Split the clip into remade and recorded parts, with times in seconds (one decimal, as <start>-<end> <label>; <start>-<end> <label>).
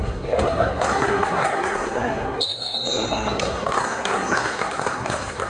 0.0-5.5 remade